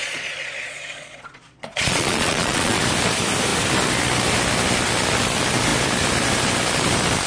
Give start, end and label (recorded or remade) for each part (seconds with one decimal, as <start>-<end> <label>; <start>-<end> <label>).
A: 0.0-2.8 remade; 2.8-7.3 recorded